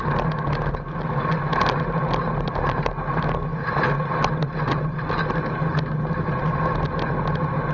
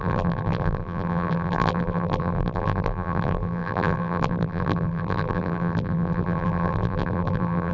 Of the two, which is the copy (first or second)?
second